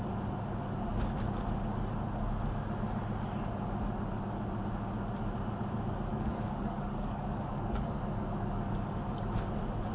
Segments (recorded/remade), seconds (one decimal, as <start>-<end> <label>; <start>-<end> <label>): 0.0-6.1 recorded; 6.1-9.0 remade; 9.0-9.9 recorded